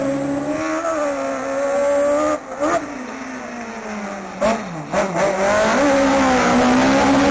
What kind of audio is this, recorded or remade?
recorded